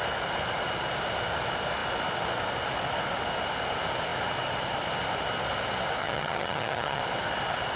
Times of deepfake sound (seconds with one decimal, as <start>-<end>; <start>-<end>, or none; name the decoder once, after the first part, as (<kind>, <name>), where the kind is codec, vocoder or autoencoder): 6.0-7.0 (vocoder, HiFi-GAN)